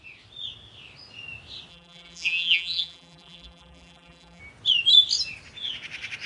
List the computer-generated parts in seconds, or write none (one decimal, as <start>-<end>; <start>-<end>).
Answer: 1.7-4.4